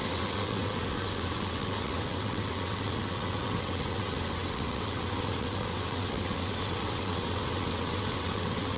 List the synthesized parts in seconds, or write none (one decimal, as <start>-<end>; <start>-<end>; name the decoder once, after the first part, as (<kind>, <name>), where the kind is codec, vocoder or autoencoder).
0.0-8.8 (vocoder, WaveNeXt)